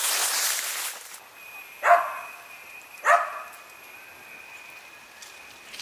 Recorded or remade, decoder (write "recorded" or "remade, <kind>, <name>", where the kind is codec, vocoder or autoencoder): recorded